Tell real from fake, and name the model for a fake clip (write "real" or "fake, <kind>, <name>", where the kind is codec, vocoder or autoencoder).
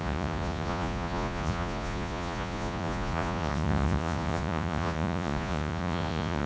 fake, vocoder, Vocos